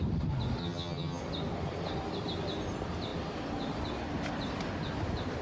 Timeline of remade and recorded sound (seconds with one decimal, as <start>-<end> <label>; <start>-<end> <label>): 0.0-0.6 recorded; 0.6-1.2 remade; 1.2-5.4 recorded